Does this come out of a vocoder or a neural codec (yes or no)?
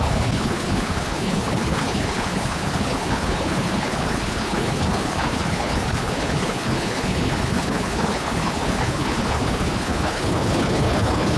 yes